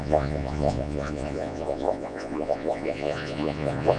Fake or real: fake